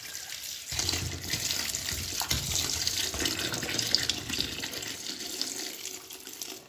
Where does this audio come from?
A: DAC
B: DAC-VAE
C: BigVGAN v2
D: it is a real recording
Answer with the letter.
D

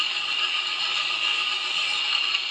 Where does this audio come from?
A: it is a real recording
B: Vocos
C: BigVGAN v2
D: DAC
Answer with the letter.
D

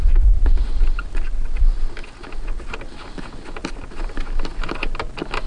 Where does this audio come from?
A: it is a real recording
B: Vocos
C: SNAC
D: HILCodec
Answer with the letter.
A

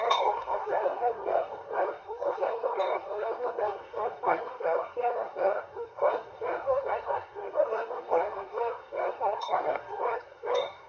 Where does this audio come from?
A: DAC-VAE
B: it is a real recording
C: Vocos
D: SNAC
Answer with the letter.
D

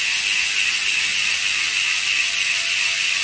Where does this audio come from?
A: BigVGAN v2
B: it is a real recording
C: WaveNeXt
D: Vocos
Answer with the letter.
B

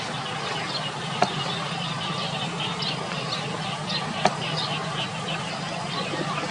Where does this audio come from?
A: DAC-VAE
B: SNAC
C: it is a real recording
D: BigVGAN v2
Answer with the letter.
C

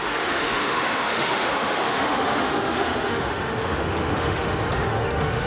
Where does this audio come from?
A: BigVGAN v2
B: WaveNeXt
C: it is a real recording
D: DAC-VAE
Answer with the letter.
D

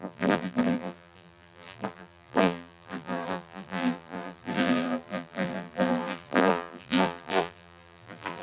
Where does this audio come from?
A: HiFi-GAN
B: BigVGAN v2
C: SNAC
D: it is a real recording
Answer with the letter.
B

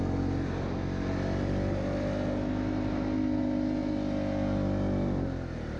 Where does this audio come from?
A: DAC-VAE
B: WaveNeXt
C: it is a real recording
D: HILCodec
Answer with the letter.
C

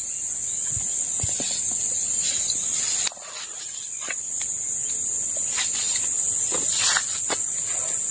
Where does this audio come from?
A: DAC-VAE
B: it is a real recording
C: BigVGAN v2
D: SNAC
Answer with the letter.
B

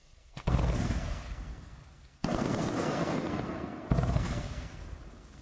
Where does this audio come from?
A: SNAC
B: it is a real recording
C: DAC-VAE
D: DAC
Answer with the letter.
A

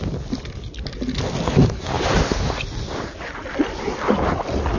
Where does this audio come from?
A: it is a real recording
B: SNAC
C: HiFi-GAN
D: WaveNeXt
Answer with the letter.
A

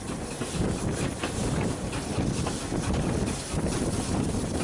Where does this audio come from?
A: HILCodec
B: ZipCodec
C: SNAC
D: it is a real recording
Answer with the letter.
D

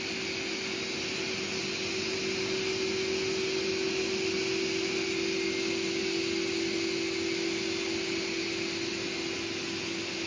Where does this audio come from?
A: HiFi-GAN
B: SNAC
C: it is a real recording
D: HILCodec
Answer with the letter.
C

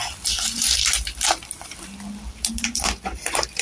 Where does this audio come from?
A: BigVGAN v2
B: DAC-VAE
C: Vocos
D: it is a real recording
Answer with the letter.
A